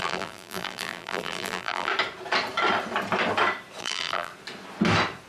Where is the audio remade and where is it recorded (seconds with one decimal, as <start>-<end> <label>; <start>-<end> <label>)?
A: 0.0-1.9 remade; 1.9-3.8 recorded; 3.8-4.3 remade; 4.3-5.3 recorded